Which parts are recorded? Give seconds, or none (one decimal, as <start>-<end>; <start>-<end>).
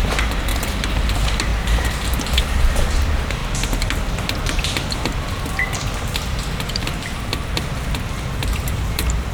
1.5-2.6; 3.4-6.7; 7.3-8.7